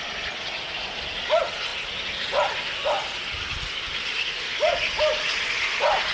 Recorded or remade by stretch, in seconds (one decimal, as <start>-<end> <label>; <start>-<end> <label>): 0.0-6.1 recorded